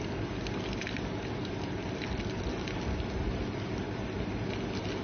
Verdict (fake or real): real